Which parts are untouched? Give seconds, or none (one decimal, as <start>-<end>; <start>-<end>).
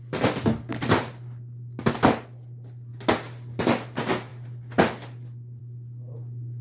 0.0-6.6